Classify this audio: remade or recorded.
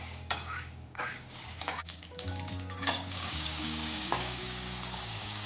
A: remade